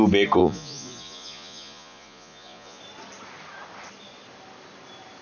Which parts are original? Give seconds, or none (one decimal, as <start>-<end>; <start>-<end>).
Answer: 0.0-0.4; 2.8-5.2